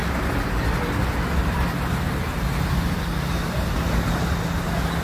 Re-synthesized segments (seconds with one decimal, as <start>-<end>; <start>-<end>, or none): none